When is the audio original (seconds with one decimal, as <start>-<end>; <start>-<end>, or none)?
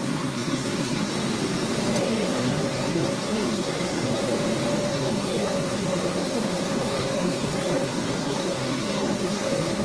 1.1-2.0; 4.3-4.9